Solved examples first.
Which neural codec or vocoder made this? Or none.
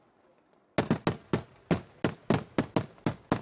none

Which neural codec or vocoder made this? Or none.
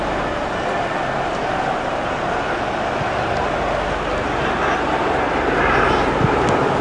none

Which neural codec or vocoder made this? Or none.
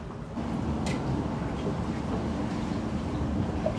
none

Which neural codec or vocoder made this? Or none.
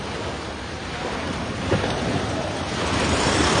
vocoder, BigVGAN v2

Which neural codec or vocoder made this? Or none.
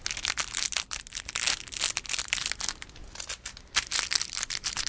none